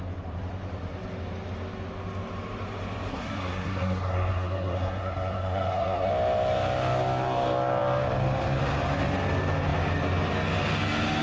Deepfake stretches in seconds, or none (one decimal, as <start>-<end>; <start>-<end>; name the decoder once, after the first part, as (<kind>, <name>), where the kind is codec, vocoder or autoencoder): 3.1-6.1 (codec, SNAC)